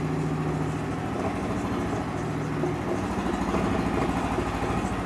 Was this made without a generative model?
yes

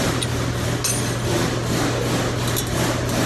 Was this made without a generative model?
yes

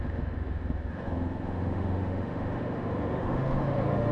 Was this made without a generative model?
no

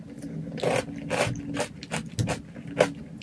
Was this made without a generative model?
yes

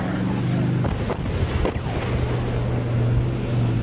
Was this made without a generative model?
yes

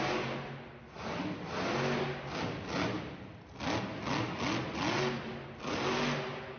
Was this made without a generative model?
yes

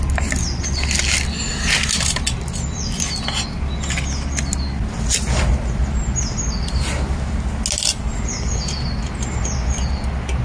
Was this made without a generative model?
yes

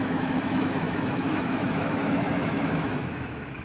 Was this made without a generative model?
no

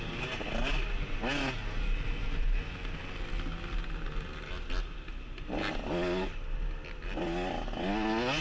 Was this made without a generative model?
yes